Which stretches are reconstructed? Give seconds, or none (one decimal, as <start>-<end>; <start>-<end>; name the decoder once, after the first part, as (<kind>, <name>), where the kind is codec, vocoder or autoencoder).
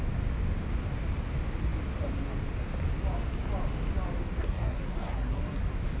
4.4-5.4 (codec, SNAC)